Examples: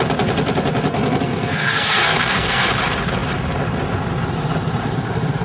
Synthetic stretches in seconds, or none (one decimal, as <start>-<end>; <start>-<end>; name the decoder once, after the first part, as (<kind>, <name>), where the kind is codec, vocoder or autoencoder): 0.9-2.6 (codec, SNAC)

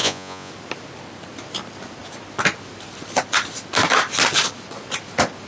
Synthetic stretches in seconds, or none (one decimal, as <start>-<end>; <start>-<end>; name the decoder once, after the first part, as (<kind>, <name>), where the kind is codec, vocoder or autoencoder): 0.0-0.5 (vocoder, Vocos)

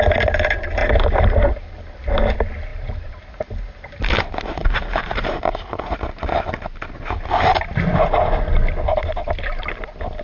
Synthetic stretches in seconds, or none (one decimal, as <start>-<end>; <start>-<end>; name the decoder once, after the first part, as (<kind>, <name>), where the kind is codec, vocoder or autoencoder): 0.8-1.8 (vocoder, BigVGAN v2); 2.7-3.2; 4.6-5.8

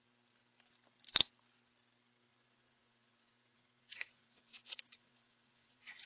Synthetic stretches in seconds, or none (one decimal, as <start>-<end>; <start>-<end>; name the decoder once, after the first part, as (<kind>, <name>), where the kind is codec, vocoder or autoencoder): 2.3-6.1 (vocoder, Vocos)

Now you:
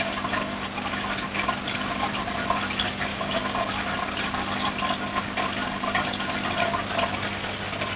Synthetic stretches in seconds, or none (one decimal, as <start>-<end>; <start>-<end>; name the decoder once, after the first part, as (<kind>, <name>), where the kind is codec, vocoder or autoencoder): 3.1-3.7 (codec, DAC); 5.6-6.2

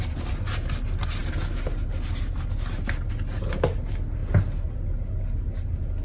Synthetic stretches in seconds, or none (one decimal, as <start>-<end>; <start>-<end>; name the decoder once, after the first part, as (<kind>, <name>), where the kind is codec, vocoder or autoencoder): none